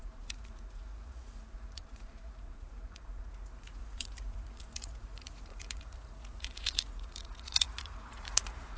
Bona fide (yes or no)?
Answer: no